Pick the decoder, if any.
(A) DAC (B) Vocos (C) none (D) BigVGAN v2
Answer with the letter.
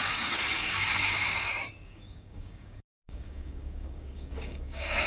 A